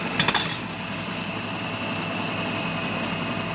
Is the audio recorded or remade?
recorded